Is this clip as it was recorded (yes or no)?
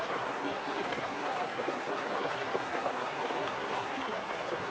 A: no